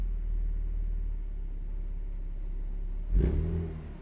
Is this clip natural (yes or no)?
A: yes